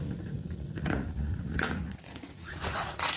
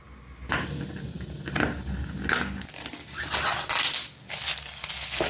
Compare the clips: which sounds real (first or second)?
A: second